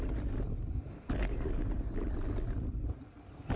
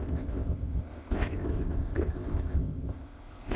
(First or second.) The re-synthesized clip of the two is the second